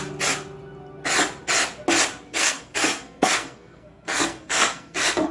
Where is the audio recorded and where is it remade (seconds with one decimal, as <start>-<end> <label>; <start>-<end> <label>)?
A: 0.0-2.3 recorded; 2.3-5.3 remade